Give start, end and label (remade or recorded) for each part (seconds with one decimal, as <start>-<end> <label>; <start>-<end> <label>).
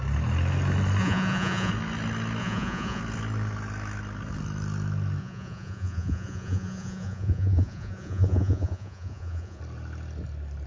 0.0-1.0 recorded; 1.0-1.7 remade; 1.7-2.4 recorded; 2.4-3.0 remade; 3.0-5.2 recorded; 5.2-9.6 remade; 9.6-10.7 recorded